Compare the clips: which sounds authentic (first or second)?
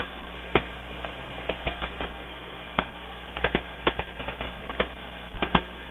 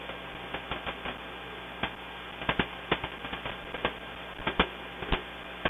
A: second